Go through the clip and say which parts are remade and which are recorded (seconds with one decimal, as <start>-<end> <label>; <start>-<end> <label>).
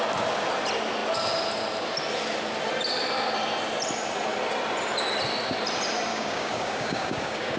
0.0-6.1 recorded; 6.1-7.6 remade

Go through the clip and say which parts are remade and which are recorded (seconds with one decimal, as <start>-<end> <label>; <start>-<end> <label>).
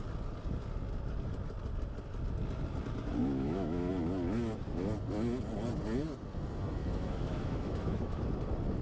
0.0-3.2 recorded; 3.2-3.9 remade; 3.9-6.8 recorded; 6.8-8.2 remade; 8.2-8.8 recorded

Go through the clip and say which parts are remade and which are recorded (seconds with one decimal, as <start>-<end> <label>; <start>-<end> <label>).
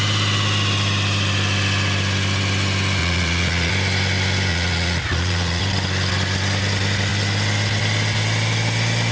0.0-3.0 recorded; 3.0-3.7 remade; 3.7-4.5 recorded; 4.5-5.6 remade; 5.6-9.1 recorded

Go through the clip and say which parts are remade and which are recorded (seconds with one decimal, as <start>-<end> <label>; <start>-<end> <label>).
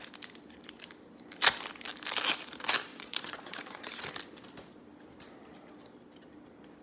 0.0-2.9 recorded; 2.9-3.9 remade; 3.9-6.8 recorded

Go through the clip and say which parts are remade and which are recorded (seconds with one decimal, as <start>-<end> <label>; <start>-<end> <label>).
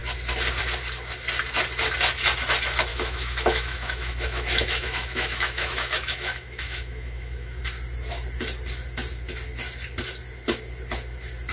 0.0-2.9 recorded; 2.9-7.6 remade; 7.6-11.5 recorded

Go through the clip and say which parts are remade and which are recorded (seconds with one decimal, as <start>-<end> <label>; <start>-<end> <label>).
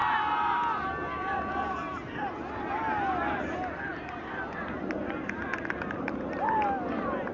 0.0-7.3 recorded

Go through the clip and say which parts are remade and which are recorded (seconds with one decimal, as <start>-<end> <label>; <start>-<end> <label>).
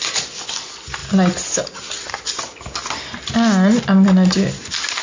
0.0-5.0 recorded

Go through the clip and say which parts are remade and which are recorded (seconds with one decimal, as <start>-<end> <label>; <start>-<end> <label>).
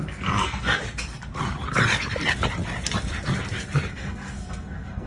0.0-0.8 remade; 0.8-3.9 recorded; 3.9-5.1 remade